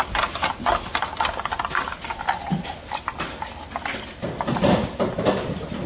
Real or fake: real